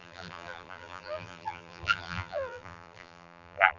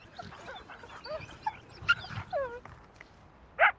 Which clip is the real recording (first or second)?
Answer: second